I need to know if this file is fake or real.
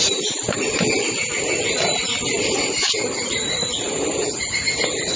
fake